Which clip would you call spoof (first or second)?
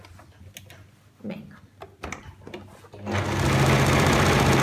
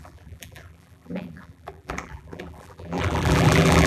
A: second